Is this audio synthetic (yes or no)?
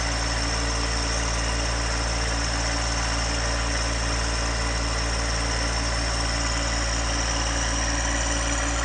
no